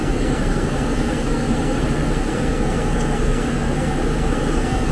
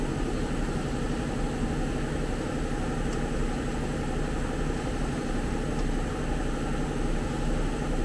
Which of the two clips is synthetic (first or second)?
first